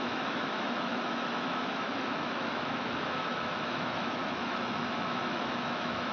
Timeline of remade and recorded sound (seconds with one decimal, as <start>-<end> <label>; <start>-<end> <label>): 0.0-6.1 remade